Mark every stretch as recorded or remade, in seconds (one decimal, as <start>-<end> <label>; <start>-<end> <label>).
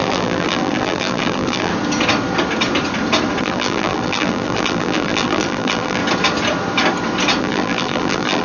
0.0-1.7 remade; 1.7-3.4 recorded; 3.4-6.0 remade; 6.0-7.4 recorded; 7.4-8.4 remade